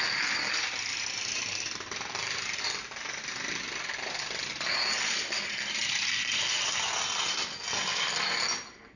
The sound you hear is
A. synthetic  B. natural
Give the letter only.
B